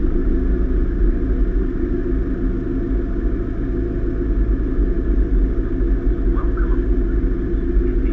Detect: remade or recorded recorded